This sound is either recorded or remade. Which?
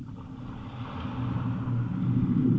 recorded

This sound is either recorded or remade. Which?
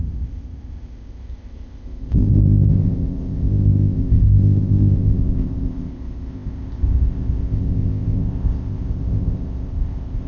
remade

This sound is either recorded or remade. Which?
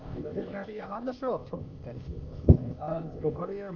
remade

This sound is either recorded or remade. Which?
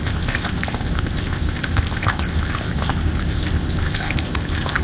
remade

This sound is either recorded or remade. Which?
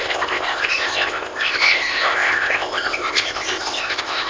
remade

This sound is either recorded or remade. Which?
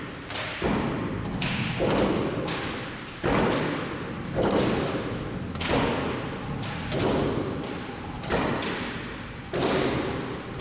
recorded